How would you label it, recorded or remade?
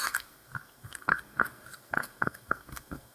remade